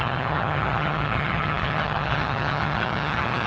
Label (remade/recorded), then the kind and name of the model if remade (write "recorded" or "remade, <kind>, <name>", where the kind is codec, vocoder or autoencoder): remade, vocoder, HiFi-GAN